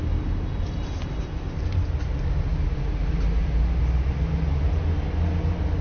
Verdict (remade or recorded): recorded